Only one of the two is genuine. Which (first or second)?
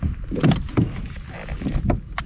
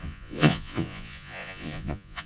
first